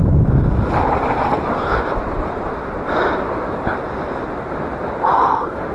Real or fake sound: real